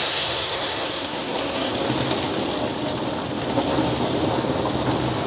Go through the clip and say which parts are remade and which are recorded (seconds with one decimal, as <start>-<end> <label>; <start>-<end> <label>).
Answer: 0.0-1.7 remade; 1.7-5.3 recorded